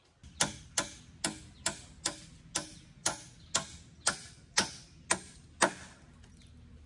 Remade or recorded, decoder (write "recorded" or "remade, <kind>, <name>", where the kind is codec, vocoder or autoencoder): recorded